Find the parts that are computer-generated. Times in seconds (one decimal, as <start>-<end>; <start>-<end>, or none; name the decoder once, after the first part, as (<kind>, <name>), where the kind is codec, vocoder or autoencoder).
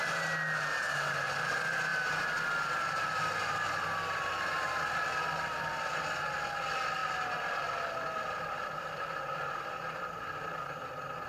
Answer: none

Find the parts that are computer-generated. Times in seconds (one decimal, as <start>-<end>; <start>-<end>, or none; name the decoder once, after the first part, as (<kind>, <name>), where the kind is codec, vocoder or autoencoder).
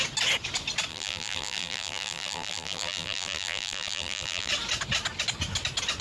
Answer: 0.9-4.5 (vocoder, BigVGAN v2)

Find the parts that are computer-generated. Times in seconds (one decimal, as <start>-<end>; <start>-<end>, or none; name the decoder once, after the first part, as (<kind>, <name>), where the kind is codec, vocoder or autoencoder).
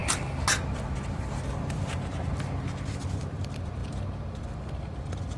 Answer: none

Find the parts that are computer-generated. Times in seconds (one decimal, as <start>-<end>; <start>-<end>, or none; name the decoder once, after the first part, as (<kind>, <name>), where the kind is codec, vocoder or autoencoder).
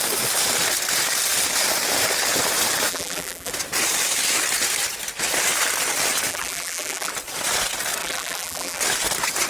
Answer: 2.9-3.5 (vocoder, BigVGAN v2); 6.3-7.1; 8.0-8.8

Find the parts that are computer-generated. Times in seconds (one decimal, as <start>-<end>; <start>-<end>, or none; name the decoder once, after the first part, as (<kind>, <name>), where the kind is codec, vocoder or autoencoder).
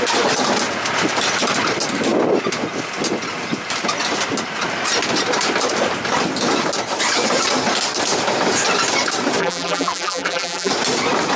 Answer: 9.4-10.7 (vocoder, BigVGAN v2)